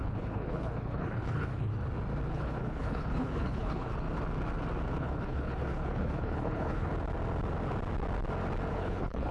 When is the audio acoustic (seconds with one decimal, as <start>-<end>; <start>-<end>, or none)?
1.7-2.3; 3.9-5.0; 6.9-8.7